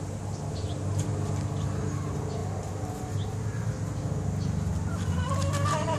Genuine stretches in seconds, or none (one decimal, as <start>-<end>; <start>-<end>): 0.0-6.0